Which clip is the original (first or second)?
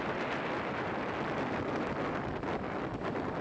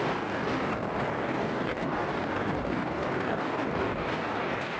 first